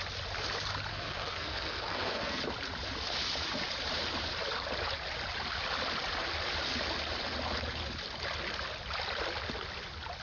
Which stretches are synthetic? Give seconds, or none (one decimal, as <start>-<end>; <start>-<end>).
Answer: 0.9-2.4